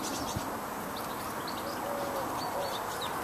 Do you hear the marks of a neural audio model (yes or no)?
no